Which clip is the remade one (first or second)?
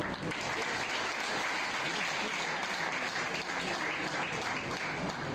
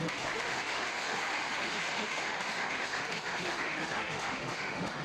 second